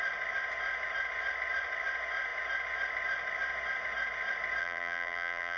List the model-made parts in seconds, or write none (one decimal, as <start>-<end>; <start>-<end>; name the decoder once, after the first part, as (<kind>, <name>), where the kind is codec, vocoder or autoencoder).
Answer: 4.6-5.6 (vocoder, BigVGAN v2)